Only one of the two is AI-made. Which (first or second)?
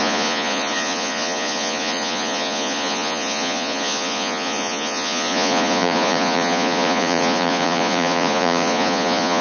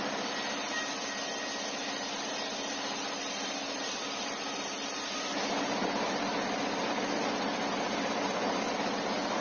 first